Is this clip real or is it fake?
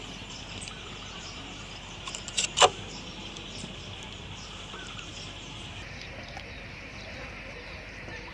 fake